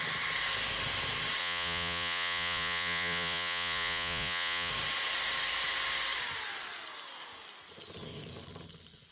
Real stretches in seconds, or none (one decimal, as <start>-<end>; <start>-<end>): 0.0-1.4; 4.7-9.1